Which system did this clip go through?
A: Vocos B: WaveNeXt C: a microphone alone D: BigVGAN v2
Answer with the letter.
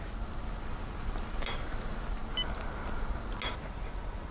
C